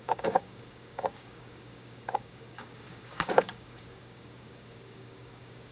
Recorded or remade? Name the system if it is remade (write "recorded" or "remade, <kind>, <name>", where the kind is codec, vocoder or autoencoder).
remade, codec, DAC